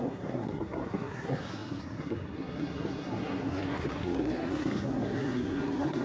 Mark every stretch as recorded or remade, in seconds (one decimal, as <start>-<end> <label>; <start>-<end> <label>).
0.0-6.0 remade